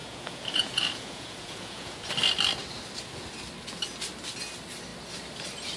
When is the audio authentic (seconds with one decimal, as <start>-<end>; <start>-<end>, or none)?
2.1-5.8